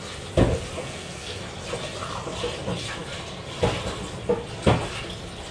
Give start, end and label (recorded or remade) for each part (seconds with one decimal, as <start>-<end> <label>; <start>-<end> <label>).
0.0-0.8 recorded; 0.8-1.4 remade; 1.4-5.5 recorded